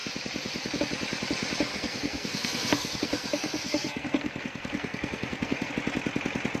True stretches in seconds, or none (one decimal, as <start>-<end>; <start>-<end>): 0.0-1.7; 5.7-6.6